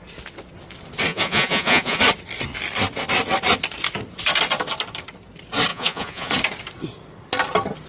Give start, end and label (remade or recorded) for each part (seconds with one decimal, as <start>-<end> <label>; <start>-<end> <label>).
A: 0.0-1.1 recorded; 1.1-2.0 remade; 2.0-5.7 recorded; 5.7-6.3 remade; 6.3-7.9 recorded